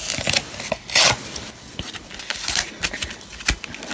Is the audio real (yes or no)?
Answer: yes